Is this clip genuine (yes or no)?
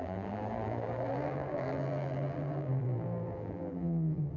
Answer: no